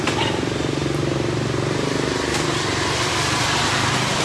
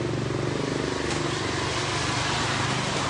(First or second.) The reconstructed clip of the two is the first